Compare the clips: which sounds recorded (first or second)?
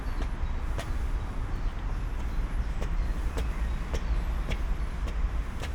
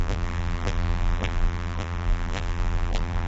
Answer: first